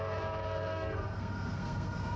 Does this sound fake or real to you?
fake